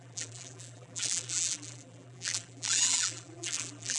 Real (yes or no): no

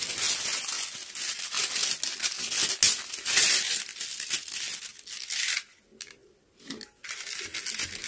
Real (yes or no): yes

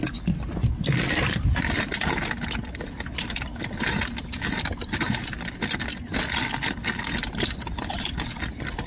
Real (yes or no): yes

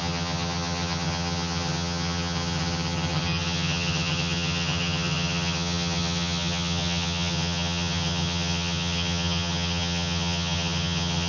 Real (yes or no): no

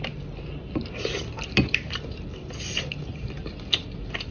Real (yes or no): yes